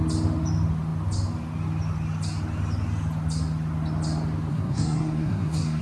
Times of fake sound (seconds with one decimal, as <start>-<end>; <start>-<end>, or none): 4.5-5.8

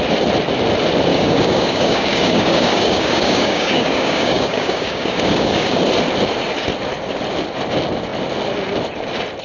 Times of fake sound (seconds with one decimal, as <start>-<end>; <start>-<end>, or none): 1.1-5.8

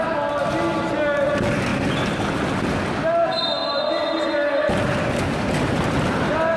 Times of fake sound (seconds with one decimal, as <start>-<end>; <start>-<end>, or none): none

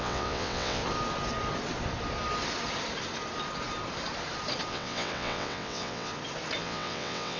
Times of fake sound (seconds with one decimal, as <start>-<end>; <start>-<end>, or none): 0.0-0.8; 4.7-6.1; 6.6-7.4

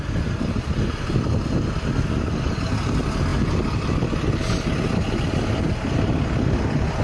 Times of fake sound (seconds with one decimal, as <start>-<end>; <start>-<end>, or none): none

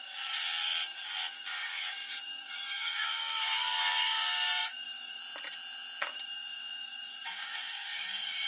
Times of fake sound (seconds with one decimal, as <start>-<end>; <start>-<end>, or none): 0.0-5.2; 6.0-8.5